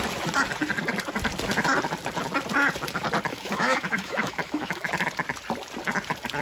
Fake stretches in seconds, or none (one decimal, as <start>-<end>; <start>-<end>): 3.3-4.9